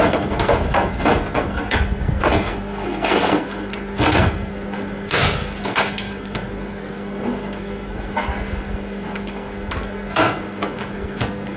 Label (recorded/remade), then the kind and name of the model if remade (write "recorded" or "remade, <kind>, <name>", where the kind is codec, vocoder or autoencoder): remade, codec, SNAC